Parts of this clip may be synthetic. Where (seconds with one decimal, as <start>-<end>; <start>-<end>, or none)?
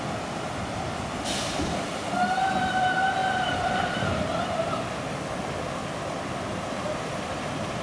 0.0-7.8